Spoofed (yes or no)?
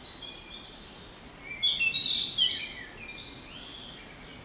no